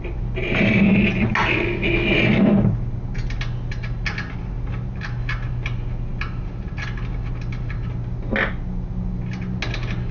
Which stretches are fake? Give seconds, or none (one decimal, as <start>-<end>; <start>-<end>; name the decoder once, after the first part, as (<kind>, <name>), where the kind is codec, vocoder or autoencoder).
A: none